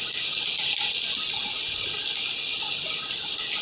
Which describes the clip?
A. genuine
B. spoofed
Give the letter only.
A